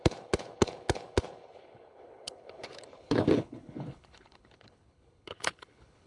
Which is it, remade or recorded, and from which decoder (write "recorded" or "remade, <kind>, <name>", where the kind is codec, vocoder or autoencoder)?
remade, codec, HILCodec